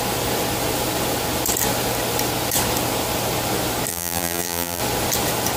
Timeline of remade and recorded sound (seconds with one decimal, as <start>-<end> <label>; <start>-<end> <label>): 0.0-3.9 recorded; 3.9-4.8 remade; 4.8-5.6 recorded